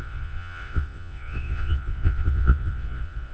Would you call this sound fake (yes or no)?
yes